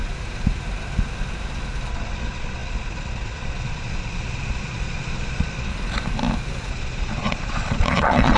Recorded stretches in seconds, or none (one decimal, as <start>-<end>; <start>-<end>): 0.0-1.9; 5.7-6.7